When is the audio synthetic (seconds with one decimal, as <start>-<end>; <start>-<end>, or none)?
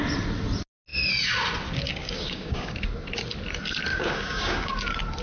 2.0-2.7; 3.9-4.7